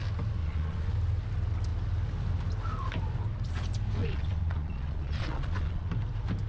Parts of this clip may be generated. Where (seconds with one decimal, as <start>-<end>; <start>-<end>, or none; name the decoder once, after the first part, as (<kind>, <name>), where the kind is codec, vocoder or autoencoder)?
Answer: 0.4-0.9 (vocoder, Vocos); 4.0-5.9